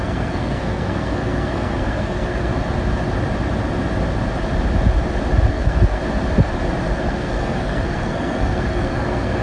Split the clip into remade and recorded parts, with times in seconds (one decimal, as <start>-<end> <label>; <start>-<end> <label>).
0.0-2.5 remade; 2.5-5.5 recorded; 5.5-6.0 remade; 6.0-6.8 recorded; 6.8-9.4 remade